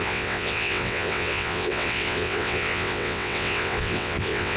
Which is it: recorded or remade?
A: remade